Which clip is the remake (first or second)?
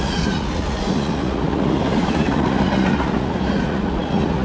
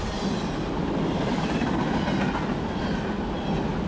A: first